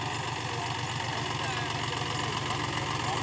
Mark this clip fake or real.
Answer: real